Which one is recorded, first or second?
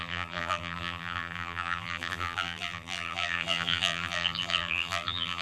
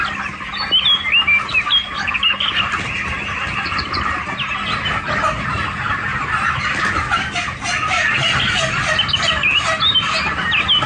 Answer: second